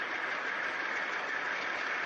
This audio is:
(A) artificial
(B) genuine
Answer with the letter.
A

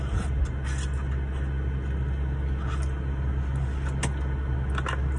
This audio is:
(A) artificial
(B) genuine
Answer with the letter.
B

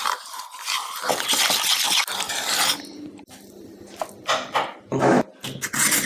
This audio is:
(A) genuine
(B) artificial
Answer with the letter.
A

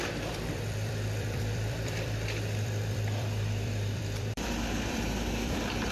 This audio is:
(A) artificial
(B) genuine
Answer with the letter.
A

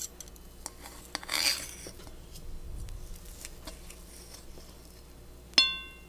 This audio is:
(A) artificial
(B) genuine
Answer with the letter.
B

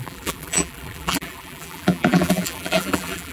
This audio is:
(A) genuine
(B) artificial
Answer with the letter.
B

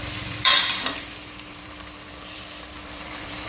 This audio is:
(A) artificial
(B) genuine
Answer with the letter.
A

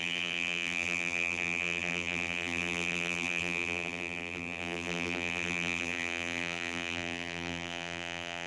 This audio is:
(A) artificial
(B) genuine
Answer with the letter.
A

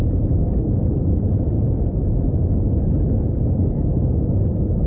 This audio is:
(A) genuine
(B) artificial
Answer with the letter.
B